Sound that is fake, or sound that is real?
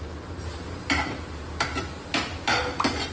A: real